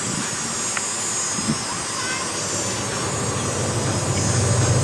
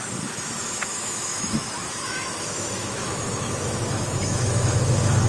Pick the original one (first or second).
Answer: first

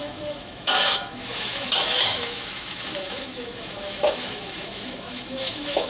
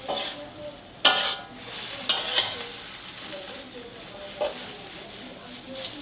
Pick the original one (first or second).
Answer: second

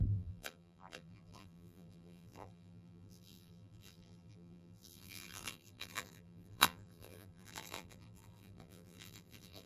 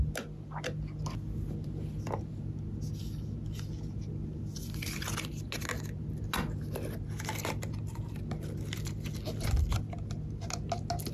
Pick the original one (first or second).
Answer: second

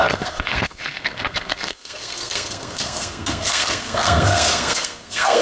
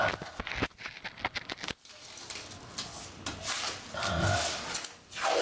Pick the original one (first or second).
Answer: second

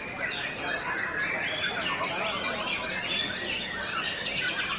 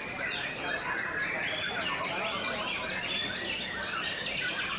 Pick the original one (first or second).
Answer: first